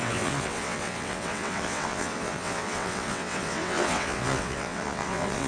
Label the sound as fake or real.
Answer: fake